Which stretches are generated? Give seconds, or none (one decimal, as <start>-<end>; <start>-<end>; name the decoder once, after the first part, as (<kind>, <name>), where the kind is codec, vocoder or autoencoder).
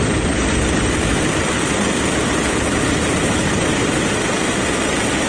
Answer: none